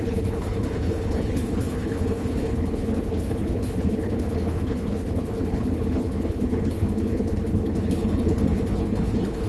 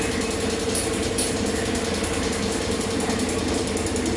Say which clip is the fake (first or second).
first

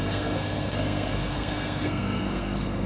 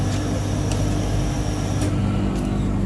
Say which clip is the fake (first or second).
first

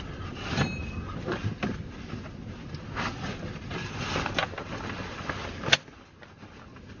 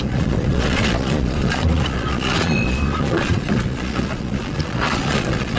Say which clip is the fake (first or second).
second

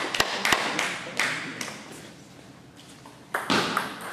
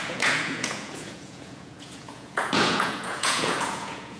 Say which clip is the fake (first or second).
second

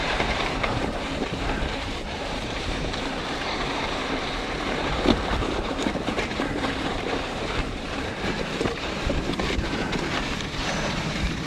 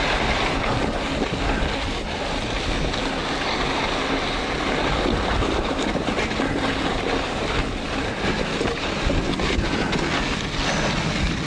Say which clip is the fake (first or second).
first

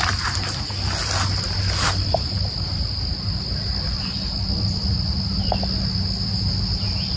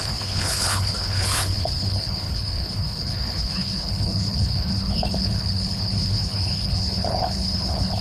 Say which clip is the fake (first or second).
second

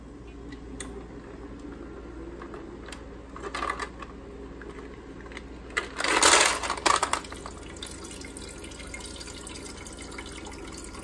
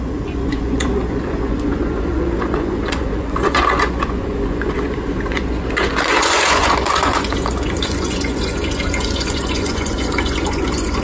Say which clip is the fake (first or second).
second